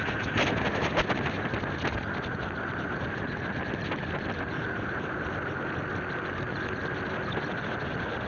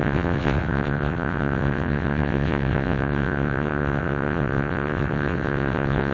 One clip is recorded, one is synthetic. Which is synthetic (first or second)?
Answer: second